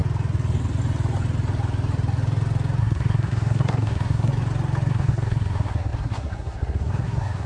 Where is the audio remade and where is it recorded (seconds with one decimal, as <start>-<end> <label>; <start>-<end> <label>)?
0.0-2.8 recorded; 2.8-4.3 remade; 4.3-4.9 recorded; 4.9-7.5 remade